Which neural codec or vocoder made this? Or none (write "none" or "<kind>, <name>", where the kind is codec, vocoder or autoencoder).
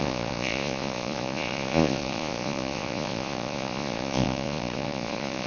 vocoder, Vocos